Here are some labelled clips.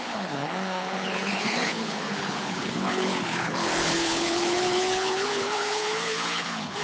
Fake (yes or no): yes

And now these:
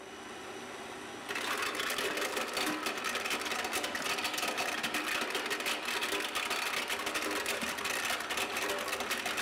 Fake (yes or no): no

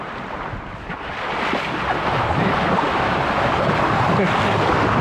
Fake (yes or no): no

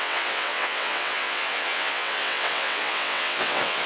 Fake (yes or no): yes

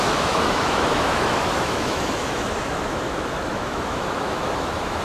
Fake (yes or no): yes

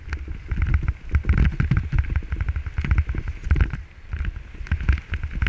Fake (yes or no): no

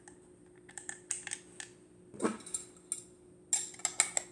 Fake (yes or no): no